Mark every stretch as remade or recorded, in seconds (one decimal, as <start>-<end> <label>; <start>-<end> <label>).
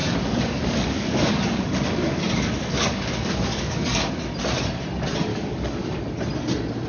0.0-4.1 remade; 4.1-5.3 recorded; 5.3-6.0 remade; 6.0-6.9 recorded